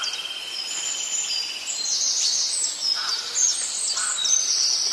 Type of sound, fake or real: real